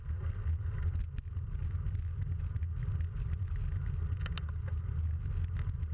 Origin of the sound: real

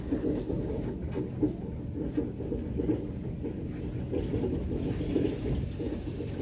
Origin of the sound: real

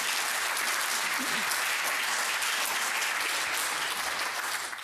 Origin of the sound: real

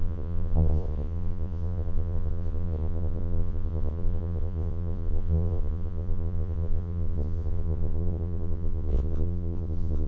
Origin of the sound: fake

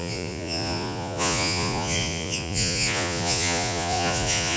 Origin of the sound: fake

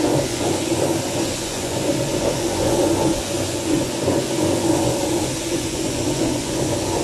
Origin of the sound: fake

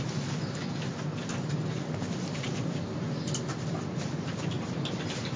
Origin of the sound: real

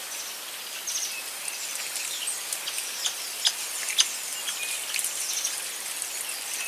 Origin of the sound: real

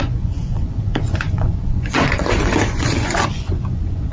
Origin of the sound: fake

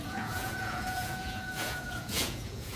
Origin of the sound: fake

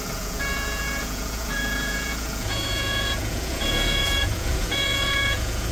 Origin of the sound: fake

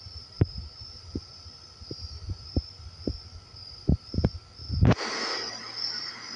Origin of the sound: real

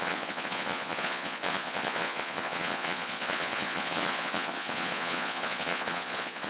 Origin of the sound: fake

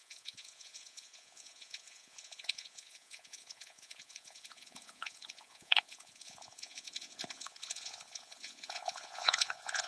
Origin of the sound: fake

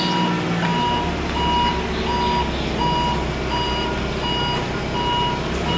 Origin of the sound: real